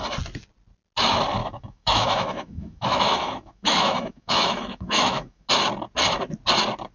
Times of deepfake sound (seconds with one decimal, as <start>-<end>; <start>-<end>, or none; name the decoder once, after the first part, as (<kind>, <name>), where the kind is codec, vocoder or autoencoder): 1.4-5.5 (autoencoder, DAC-VAE)